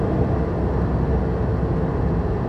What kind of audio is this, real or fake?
real